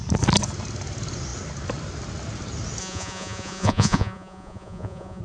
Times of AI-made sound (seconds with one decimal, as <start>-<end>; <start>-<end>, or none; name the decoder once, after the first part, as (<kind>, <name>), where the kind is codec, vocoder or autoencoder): 2.8-5.2 (vocoder, Vocos)